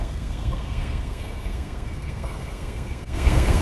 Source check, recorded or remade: remade